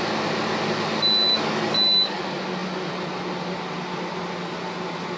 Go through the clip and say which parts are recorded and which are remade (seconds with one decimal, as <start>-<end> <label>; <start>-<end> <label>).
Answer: 0.0-1.3 recorded; 1.3-2.2 remade; 2.2-5.2 recorded

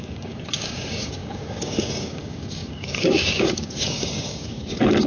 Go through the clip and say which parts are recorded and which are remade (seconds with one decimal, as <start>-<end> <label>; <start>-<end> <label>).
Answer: 0.0-5.1 remade

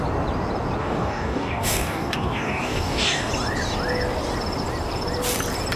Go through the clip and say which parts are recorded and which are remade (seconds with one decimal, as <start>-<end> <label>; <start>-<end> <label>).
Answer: 0.0-0.8 recorded; 0.8-3.3 remade; 3.3-5.8 recorded

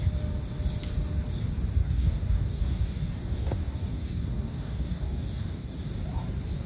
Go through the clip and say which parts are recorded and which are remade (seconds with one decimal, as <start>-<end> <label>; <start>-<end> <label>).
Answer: 0.0-1.8 recorded; 1.8-5.8 remade; 5.8-6.7 recorded

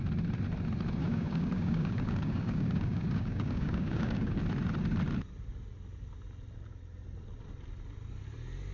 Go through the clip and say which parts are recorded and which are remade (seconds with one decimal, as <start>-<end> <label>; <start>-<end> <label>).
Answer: 0.0-1.0 recorded; 1.0-4.4 remade; 4.4-8.7 recorded

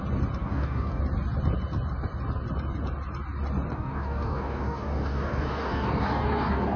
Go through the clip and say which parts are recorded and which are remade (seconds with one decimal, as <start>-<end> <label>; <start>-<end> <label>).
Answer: 0.0-0.4 recorded; 0.4-1.0 remade; 1.0-3.7 recorded; 3.7-6.8 remade

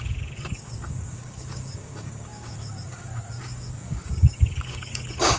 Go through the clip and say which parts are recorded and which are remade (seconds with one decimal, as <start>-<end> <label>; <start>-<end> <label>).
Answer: 0.0-5.4 remade